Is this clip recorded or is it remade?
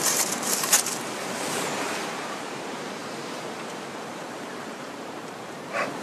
remade